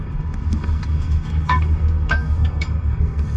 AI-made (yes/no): yes